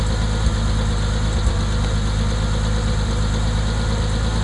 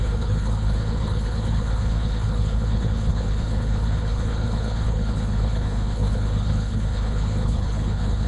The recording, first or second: first